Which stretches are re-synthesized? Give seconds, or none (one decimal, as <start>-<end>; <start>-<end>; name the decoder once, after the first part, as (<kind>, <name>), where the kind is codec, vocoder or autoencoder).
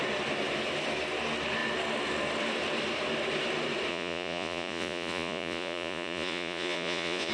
3.9-7.3 (vocoder, Vocos)